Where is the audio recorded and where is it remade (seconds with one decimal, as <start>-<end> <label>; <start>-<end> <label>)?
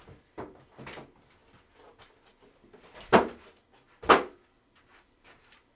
0.0-5.8 recorded